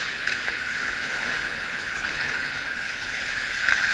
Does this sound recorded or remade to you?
remade